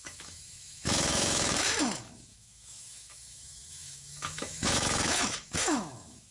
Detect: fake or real fake